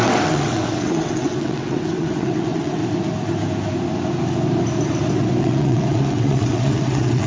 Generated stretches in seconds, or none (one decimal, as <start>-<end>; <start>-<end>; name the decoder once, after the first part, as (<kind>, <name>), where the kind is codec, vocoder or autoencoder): 0.0-2.8 (vocoder, WaveNeXt); 5.4-7.3